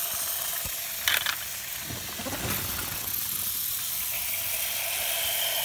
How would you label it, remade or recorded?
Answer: recorded